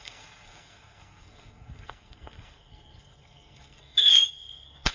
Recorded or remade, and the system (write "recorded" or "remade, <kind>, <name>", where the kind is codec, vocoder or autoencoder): remade, codec, SNAC